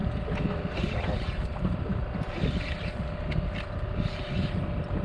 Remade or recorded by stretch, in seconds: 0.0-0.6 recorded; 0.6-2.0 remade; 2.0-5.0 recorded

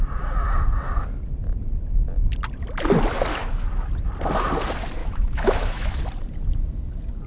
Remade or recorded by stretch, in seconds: 0.0-3.3 recorded; 3.3-3.9 remade; 3.9-5.0 recorded; 5.0-6.0 remade; 6.0-7.3 recorded

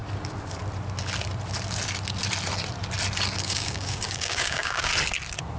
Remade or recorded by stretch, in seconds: 0.0-3.4 recorded; 3.4-4.9 remade; 4.9-5.6 recorded

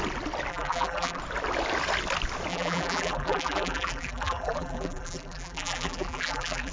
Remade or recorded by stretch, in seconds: 0.0-0.5 recorded; 0.5-1.2 remade; 1.2-2.5 recorded; 2.5-6.7 remade

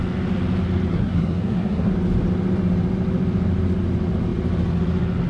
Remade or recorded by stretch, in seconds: 0.0-0.9 recorded; 0.9-1.9 remade; 1.9-5.3 recorded

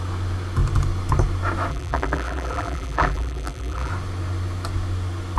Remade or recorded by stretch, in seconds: 0.0-1.7 recorded; 1.7-3.9 remade; 3.9-5.4 recorded

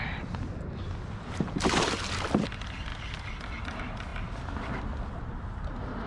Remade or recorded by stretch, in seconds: 0.0-6.1 recorded